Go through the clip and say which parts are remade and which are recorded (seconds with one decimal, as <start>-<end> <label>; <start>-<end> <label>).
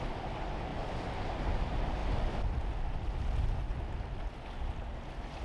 0.0-5.4 recorded